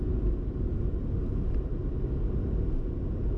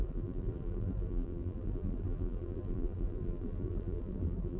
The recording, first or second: first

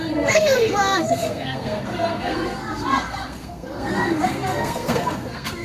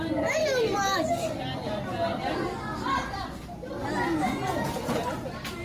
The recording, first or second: second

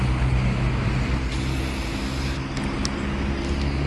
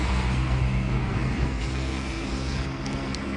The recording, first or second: first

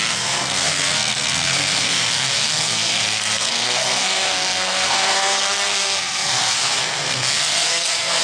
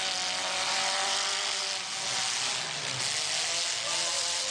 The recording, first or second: second